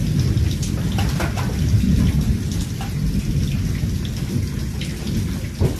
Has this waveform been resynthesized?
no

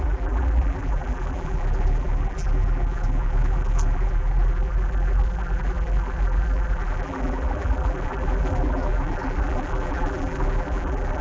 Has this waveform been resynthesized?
yes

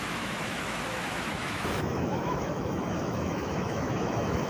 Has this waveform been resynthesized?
yes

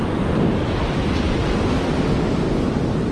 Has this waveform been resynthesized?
no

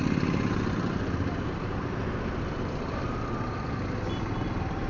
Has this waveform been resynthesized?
no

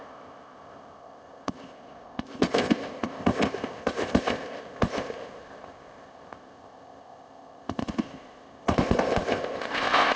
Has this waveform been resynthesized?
yes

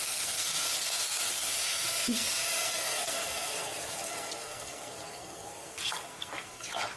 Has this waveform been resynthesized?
yes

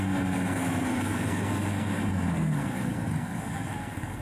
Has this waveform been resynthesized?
yes